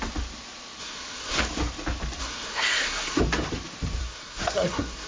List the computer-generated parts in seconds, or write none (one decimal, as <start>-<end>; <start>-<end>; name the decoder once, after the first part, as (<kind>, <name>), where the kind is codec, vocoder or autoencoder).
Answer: 0.8-1.4 (codec, SNAC); 2.2-3.2; 4.0-5.1

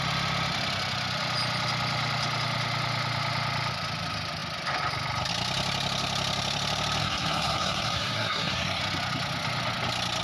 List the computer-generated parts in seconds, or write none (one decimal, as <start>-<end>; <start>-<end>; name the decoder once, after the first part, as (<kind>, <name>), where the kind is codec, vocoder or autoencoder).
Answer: 7.0-8.8 (codec, SNAC)